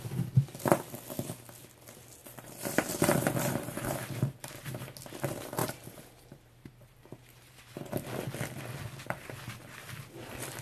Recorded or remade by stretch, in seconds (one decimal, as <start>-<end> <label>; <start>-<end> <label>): 0.0-2.2 recorded; 2.2-4.8 remade; 4.8-5.6 recorded; 5.6-7.6 remade; 7.6-10.6 recorded